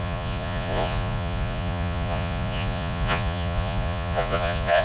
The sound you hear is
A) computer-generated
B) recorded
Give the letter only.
A